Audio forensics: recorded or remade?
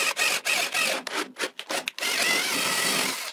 recorded